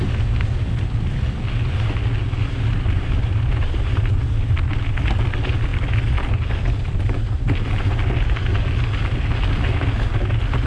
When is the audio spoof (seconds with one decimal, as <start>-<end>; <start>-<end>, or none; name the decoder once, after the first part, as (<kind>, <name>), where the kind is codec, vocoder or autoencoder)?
2.4-4.1 (vocoder, BigVGAN v2)